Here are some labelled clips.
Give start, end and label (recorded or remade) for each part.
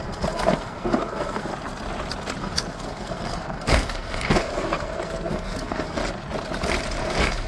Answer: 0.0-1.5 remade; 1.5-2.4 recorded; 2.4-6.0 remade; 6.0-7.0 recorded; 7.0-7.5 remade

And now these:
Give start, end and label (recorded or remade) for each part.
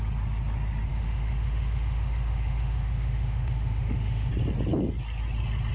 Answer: 0.0-0.9 recorded; 0.9-4.3 remade; 4.3-5.7 recorded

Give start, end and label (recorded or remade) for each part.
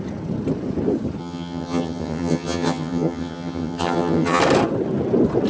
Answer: 0.0-1.2 recorded; 1.2-4.4 remade; 4.4-5.5 recorded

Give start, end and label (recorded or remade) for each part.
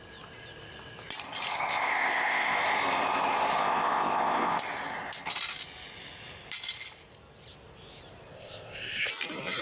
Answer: 0.0-1.5 recorded; 1.5-2.6 remade; 2.6-3.6 recorded; 3.6-4.6 remade; 4.6-8.3 recorded; 8.3-9.1 remade; 9.1-9.6 recorded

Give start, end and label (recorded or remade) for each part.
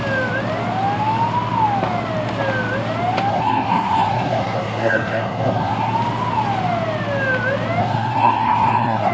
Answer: 0.0-3.3 recorded; 3.3-5.9 remade; 5.9-7.8 recorded; 7.8-9.1 remade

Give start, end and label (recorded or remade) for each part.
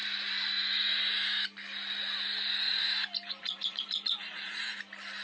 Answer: 0.0-3.4 recorded; 3.4-4.8 remade; 4.8-5.2 recorded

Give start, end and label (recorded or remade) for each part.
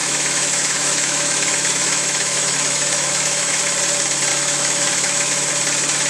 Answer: 0.0-3.6 remade; 3.6-4.3 recorded; 4.3-5.5 remade; 5.5-6.1 recorded